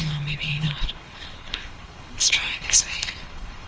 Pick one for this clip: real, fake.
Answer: fake